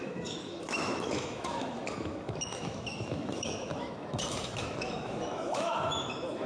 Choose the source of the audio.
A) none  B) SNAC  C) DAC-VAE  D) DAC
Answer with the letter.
C